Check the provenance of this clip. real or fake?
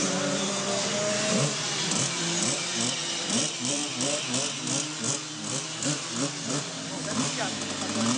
fake